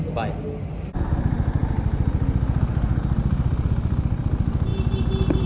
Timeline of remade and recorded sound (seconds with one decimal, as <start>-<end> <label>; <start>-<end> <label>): 0.0-5.5 recorded